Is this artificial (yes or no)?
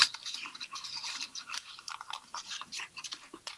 yes